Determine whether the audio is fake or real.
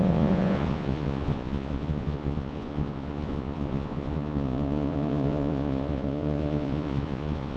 fake